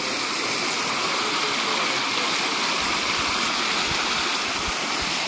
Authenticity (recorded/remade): recorded